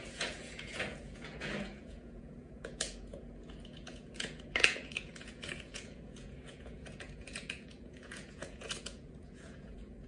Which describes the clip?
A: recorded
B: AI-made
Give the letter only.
B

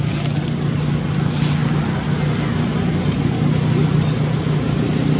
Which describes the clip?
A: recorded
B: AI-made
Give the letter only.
A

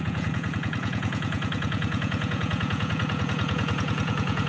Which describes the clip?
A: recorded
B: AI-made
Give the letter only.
B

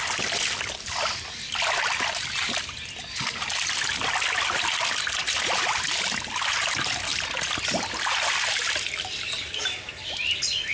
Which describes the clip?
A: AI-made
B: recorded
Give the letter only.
B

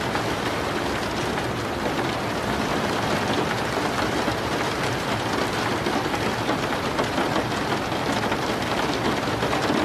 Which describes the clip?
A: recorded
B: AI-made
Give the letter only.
B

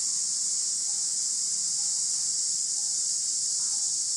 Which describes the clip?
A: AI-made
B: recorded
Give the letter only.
B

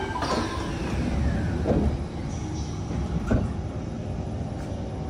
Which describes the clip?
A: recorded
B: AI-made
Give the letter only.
A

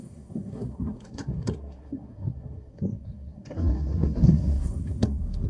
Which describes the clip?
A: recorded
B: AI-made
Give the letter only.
B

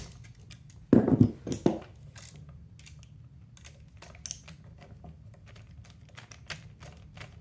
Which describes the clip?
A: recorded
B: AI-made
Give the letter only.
A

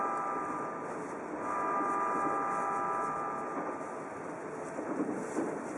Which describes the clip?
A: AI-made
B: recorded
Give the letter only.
B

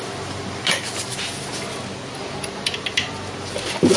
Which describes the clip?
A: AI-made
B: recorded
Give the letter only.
B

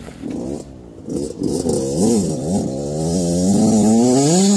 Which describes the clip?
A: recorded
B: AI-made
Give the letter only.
A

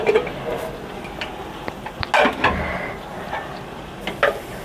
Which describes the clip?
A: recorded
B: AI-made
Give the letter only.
A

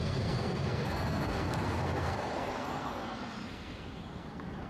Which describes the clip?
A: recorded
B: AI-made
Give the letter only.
B